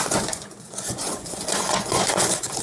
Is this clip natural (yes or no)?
no